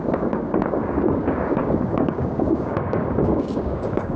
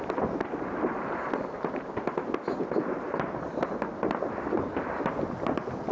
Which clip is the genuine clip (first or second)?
second